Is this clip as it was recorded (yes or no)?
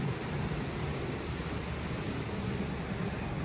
yes